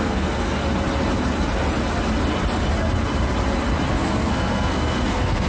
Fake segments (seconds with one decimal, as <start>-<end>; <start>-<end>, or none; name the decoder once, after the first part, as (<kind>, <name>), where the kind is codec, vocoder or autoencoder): 0.0-0.6 (codec, SNAC); 3.9-5.5